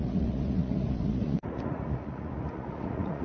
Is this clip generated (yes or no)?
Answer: yes